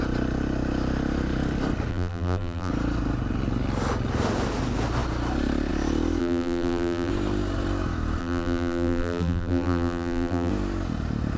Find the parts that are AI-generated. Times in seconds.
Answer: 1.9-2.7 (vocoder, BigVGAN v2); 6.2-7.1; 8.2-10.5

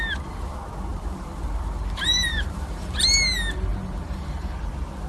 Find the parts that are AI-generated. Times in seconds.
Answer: 0.9-3.0 (vocoder, BigVGAN v2); 3.7-4.5

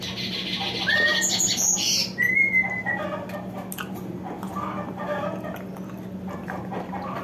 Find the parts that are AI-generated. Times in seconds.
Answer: 1.1-1.9 (vocoder, BigVGAN v2)

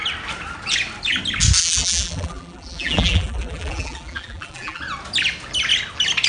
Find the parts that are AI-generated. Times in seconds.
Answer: 1.6-4.8 (vocoder, BigVGAN v2)

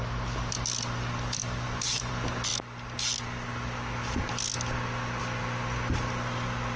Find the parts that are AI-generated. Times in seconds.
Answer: 1.4-2.1 (vocoder, BigVGAN v2)

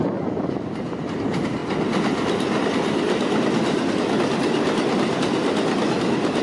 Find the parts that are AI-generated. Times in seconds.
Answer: none